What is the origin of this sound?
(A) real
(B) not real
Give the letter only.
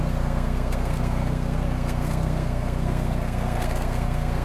B